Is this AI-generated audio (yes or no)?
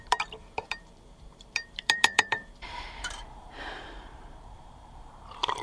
yes